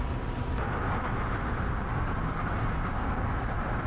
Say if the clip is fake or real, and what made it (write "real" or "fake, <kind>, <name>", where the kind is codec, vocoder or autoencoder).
fake, vocoder, BigVGAN v2